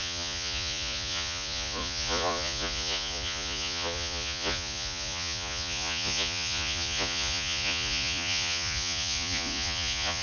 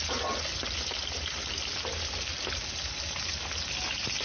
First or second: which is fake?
first